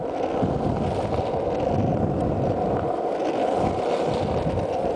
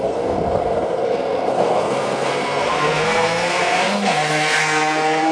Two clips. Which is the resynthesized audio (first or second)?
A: second